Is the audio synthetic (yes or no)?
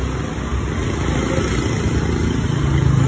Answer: no